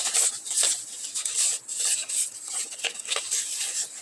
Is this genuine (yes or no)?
yes